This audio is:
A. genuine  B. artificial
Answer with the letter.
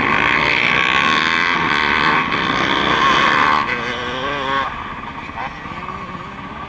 A